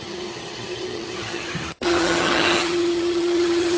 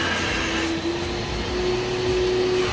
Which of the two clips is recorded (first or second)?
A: second